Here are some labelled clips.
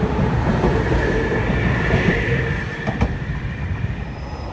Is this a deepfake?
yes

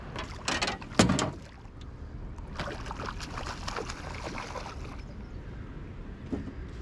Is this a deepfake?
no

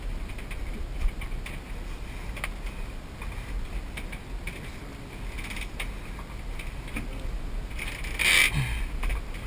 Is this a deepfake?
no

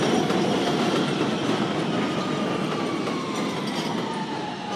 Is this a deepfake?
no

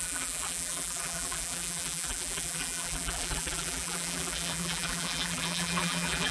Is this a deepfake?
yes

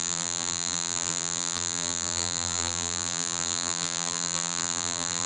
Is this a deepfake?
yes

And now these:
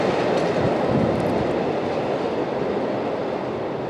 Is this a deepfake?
no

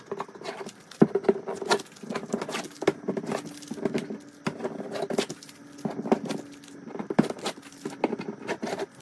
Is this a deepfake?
no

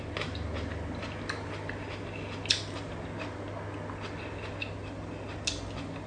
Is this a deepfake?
no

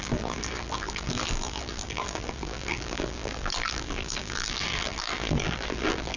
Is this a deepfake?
yes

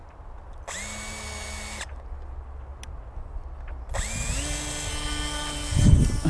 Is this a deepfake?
no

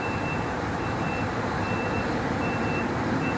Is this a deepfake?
yes